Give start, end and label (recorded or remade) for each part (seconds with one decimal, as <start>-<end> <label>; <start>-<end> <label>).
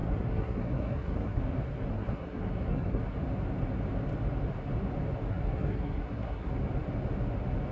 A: 0.0-1.4 remade; 1.4-1.9 recorded; 1.9-3.0 remade; 3.0-5.3 recorded; 5.3-6.5 remade; 6.5-7.7 recorded